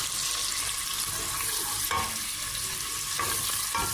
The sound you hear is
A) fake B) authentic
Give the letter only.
B